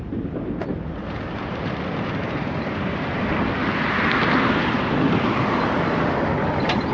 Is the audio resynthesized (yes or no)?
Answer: no